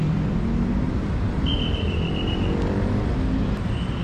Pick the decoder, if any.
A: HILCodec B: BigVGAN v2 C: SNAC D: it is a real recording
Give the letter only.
D